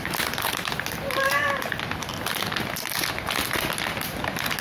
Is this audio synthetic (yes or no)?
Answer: no